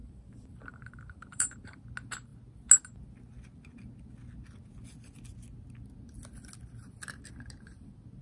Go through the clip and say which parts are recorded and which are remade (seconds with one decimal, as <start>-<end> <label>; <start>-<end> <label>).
0.0-1.8 remade; 1.8-8.2 recorded